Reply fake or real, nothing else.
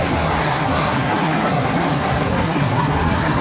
fake